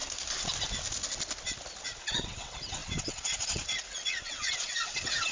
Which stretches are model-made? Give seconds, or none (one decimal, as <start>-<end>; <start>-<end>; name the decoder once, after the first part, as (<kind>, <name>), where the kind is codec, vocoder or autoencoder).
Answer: 2.0-5.3 (vocoder, WaveNeXt)